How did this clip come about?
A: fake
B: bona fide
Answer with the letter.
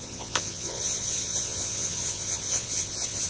A